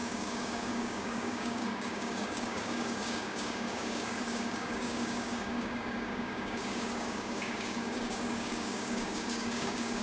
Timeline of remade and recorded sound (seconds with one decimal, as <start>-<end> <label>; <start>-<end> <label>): 0.0-10.0 remade